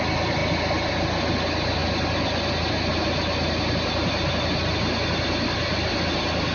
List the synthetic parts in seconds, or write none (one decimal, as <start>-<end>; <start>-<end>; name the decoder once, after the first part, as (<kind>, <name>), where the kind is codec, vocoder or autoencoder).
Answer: none